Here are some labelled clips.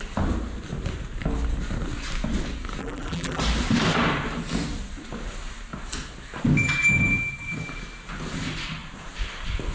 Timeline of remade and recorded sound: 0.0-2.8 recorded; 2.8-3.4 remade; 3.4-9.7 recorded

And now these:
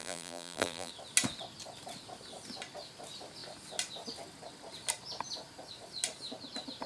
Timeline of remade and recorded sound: 0.0-0.9 remade; 0.9-6.9 recorded